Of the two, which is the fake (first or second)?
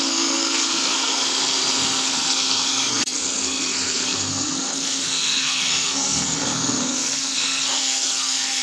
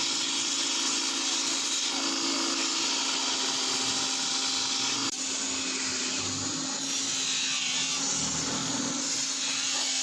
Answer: first